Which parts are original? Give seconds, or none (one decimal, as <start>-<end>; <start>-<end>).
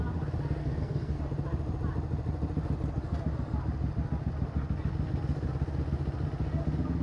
0.0-0.6; 1.2-7.0